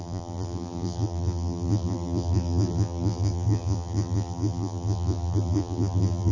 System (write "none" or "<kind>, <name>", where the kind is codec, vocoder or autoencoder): vocoder, BigVGAN v2